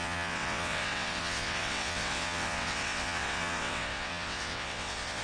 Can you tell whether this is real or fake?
fake